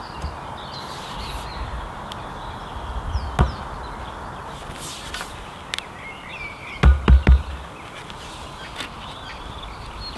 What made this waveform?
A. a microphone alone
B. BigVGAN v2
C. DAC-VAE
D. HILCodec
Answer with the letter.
A